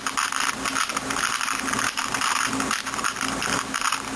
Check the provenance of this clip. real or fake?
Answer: fake